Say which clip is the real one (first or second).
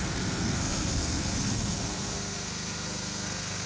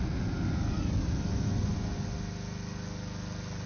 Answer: second